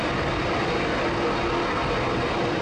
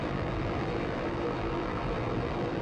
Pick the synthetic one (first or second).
second